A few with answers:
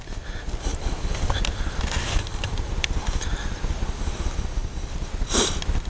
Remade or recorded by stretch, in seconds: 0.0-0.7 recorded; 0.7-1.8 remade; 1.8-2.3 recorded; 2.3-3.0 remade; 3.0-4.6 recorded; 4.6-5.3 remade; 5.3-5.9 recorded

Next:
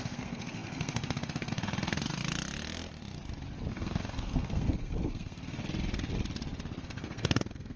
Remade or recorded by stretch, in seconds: 0.0-2.2 remade; 2.2-3.7 recorded; 3.7-5.6 remade; 5.6-6.8 recorded; 6.8-7.8 remade